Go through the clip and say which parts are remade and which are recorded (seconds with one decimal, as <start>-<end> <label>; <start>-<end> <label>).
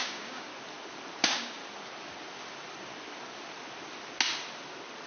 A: 0.0-0.5 remade; 0.5-1.2 recorded; 1.2-1.6 remade; 1.6-5.1 recorded